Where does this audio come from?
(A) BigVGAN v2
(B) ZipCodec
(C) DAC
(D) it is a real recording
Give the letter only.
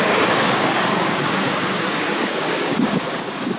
C